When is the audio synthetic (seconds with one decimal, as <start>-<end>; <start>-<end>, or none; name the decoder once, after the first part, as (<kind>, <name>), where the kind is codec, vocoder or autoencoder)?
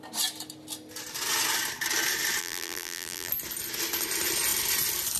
2.4-3.3 (vocoder, BigVGAN v2)